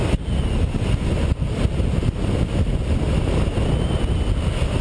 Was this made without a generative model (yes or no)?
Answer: yes